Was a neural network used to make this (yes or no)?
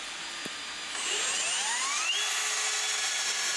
no